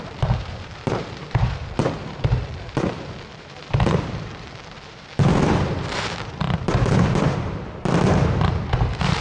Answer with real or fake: fake